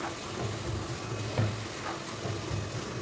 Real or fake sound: real